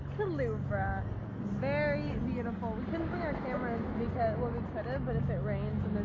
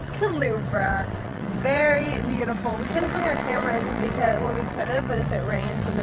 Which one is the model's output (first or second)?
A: second